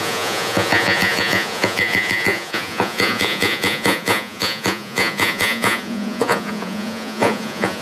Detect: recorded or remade remade